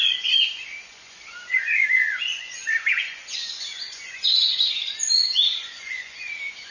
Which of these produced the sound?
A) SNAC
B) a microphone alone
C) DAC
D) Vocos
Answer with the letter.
D